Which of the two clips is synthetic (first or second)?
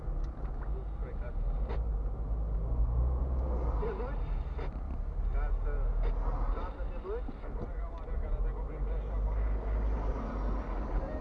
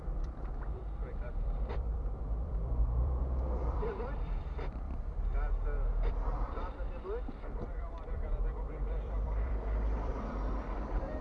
second